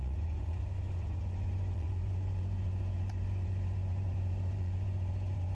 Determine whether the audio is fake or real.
fake